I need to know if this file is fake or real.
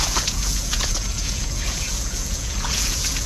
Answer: fake